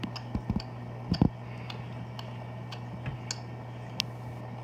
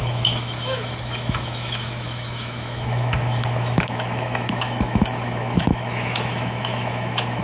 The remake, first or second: second